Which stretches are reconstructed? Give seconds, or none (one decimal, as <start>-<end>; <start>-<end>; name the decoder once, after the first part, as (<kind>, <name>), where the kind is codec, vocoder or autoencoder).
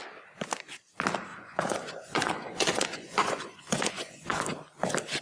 1.3-4.4 (vocoder, Vocos)